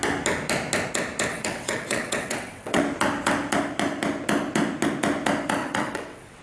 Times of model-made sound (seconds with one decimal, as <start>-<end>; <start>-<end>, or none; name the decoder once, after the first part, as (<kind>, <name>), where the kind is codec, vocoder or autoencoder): 1.3-2.8 (vocoder, WaveNeXt); 5.6-6.4